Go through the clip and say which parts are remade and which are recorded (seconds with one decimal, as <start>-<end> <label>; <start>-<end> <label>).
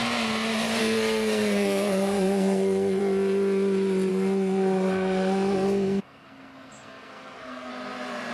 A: 0.0-0.8 recorded; 0.8-3.0 remade; 3.0-4.1 recorded; 4.1-7.7 remade; 7.7-8.3 recorded